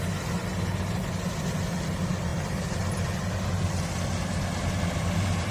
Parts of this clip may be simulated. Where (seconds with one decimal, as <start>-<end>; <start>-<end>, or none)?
2.3-3.5